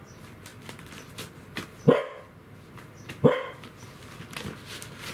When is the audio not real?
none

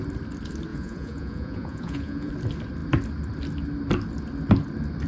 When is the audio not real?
0.7-2.3 (vocoder, Vocos)